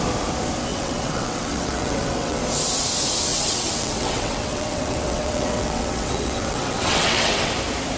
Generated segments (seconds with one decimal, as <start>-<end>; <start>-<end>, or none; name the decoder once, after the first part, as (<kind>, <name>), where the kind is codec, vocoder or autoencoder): 0.7-2.4 (vocoder, WaveNeXt); 3.3-7.5

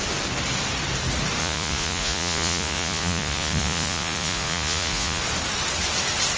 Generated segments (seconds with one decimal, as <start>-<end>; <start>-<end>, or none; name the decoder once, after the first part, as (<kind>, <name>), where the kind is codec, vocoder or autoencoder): 1.4-5.2 (vocoder, Vocos)